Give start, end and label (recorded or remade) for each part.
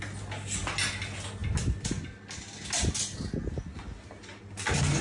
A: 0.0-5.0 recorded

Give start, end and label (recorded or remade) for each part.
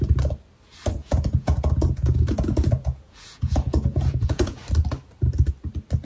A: 0.0-1.0 recorded; 1.0-4.6 remade; 4.6-6.0 recorded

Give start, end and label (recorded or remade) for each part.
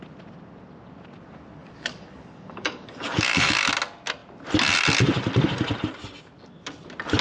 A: 0.0-1.6 recorded; 1.6-3.7 remade; 3.7-7.2 recorded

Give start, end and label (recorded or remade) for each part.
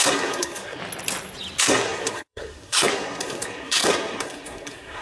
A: 0.0-0.8 remade; 0.8-1.6 recorded; 1.6-5.0 remade